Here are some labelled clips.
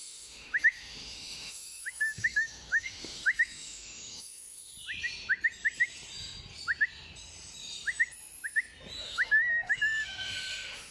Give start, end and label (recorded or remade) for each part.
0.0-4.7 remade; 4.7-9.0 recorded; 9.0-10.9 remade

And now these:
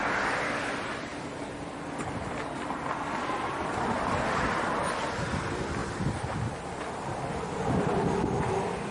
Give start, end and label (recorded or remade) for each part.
0.0-8.9 recorded

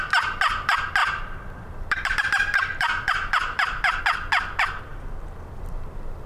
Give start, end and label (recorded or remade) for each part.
0.0-1.0 recorded; 1.0-4.0 remade; 4.0-6.3 recorded

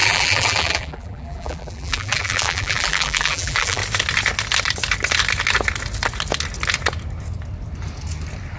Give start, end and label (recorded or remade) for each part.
0.0-3.8 remade; 3.8-8.6 recorded

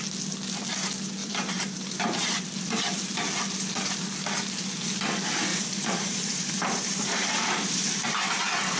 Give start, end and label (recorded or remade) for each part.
0.0-1.2 recorded; 1.2-2.4 remade; 2.4-5.5 recorded; 5.5-8.1 remade; 8.1-8.8 recorded

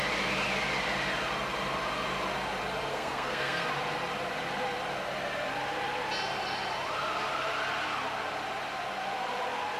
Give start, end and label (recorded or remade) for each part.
0.0-2.9 recorded; 2.9-3.7 remade; 3.7-9.8 recorded